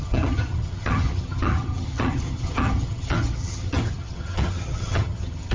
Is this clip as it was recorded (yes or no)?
no